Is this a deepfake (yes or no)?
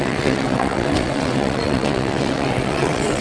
yes